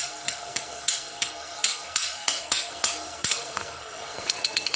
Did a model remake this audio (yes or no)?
yes